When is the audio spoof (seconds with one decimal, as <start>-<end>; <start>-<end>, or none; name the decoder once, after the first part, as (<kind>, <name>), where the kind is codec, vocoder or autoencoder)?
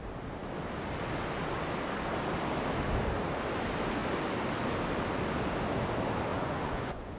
6.3-7.2 (vocoder, Vocos)